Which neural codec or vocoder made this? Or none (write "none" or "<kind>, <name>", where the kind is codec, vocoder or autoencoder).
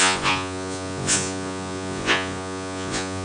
vocoder, Vocos